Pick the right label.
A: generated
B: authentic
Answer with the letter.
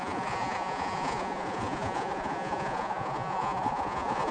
A